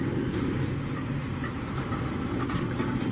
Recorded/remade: recorded